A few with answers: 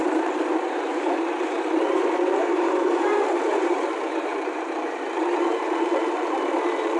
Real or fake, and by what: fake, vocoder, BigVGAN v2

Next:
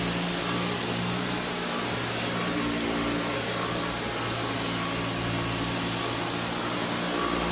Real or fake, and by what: real